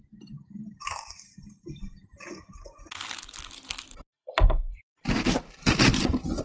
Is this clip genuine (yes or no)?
yes